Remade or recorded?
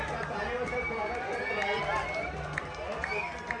recorded